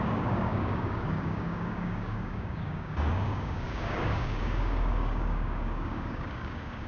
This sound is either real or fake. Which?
fake